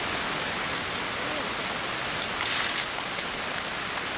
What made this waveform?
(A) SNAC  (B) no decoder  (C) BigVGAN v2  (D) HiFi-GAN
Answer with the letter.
B